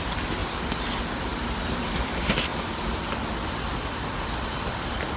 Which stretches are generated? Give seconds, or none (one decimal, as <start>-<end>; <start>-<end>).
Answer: none